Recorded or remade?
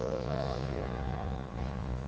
remade